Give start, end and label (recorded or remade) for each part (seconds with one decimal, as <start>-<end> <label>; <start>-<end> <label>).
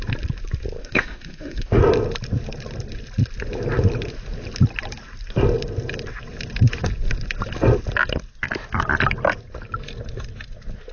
0.0-0.8 recorded; 0.8-1.8 remade; 1.8-10.9 recorded